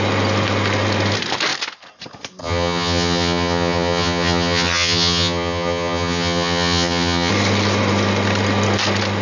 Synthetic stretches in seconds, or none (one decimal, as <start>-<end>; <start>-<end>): 2.4-7.3

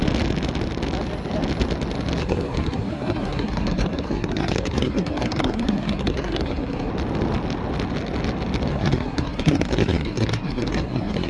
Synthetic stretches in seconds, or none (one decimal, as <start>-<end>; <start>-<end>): 2.2-6.9; 8.7-11.3

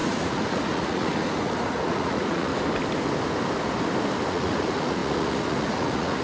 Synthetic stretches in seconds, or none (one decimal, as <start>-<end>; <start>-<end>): 0.0-2.5; 4.3-6.2

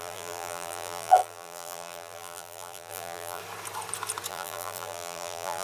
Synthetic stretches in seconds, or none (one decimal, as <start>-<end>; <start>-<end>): 0.0-3.4; 4.3-5.6